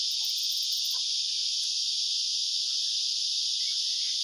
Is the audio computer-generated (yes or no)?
no